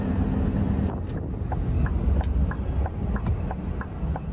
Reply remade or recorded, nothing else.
recorded